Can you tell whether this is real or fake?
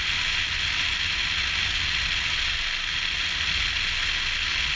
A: real